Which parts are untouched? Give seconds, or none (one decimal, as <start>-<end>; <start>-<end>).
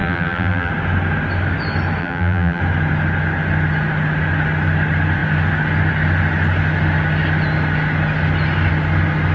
0.7-2.0; 2.6-9.3